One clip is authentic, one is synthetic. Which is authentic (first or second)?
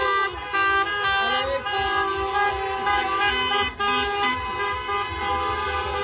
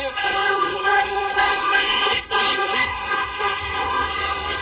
first